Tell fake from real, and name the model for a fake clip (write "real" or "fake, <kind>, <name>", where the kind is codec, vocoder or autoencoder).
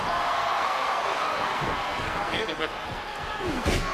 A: fake, codec, SNAC